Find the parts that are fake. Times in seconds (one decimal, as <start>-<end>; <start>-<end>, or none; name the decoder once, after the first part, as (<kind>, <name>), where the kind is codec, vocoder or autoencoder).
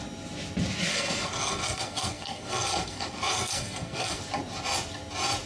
0.9-4.2 (codec, SNAC)